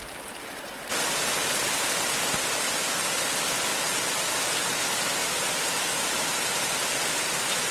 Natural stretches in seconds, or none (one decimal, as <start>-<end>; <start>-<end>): 0.0-7.7